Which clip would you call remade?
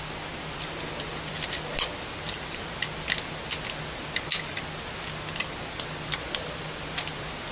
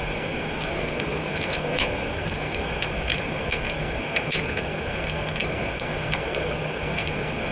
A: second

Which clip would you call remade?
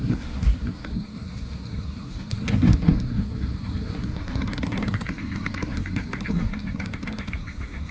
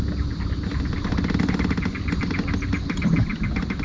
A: first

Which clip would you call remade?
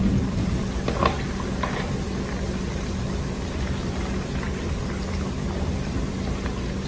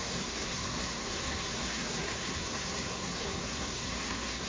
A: second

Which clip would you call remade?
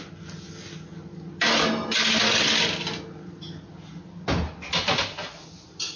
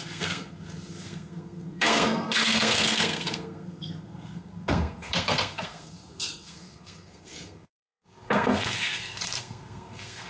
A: second